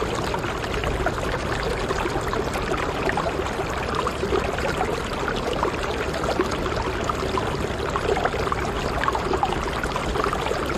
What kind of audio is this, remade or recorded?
recorded